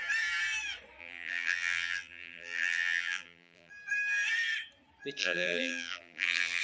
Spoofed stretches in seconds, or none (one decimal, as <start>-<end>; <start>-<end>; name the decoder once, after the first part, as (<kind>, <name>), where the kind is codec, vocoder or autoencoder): 1.0-3.7 (vocoder, BigVGAN v2); 5.2-6.6

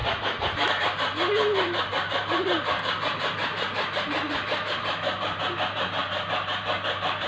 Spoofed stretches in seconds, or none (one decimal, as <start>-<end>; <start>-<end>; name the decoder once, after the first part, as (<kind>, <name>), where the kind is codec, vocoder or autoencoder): 0.0-7.3 (vocoder, BigVGAN v2)

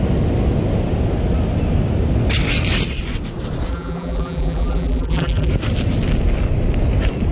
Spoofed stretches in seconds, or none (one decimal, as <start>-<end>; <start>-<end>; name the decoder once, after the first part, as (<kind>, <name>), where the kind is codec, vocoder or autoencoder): 3.7-5.5 (vocoder, BigVGAN v2)

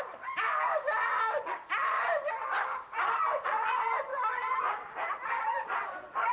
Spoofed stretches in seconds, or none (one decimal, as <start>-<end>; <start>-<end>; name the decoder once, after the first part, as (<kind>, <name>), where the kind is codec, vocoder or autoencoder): 4.1-6.3 (vocoder, BigVGAN v2)

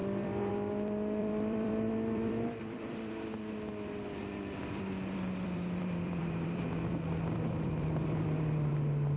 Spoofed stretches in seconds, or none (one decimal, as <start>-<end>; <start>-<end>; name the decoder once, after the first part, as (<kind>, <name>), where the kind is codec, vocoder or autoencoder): 0.0-0.5 (vocoder, BigVGAN v2); 1.2-3.1; 4.2-8.7

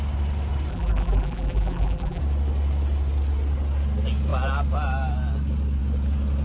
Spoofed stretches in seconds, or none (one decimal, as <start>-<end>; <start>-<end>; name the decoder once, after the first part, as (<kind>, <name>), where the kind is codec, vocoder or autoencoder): 0.7-2.2 (vocoder, BigVGAN v2)

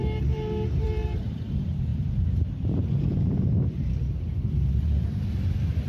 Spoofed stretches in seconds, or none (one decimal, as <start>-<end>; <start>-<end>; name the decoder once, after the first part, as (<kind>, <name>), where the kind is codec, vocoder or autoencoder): 0.0-5.9 (vocoder, BigVGAN v2)